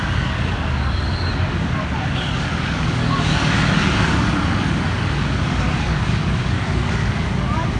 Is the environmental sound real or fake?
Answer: fake